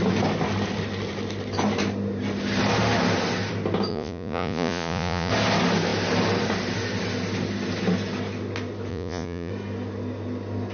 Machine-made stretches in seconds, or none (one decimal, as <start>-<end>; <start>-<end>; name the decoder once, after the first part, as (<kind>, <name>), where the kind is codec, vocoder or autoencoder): 3.9-5.3 (vocoder, Vocos); 8.9-9.5